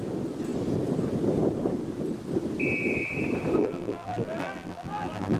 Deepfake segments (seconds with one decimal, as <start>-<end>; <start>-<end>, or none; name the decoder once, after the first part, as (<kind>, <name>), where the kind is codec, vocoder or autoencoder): 3.6-5.4 (vocoder, BigVGAN v2)